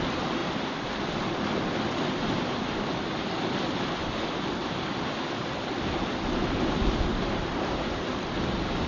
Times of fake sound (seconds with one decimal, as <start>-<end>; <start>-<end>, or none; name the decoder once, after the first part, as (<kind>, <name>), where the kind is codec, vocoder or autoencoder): 7.1-8.2 (vocoder, BigVGAN v2)